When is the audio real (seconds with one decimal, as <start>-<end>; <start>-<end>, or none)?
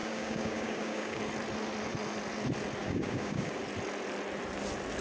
1.2-2.8; 3.6-5.0